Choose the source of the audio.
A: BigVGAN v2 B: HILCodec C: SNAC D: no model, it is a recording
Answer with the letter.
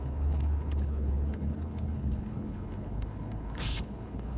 B